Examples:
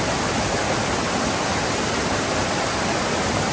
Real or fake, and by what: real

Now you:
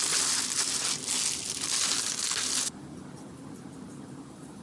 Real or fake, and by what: real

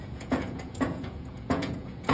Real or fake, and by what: fake, vocoder, Vocos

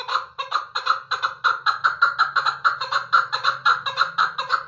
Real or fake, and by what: real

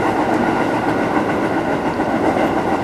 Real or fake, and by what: real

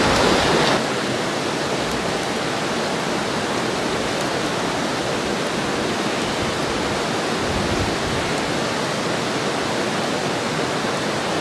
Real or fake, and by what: real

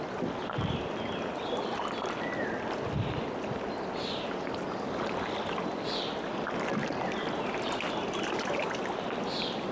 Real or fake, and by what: real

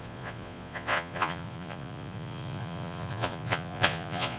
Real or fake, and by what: fake, vocoder, Vocos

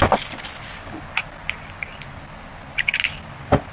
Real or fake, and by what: real